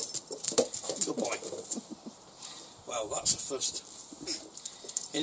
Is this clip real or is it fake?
real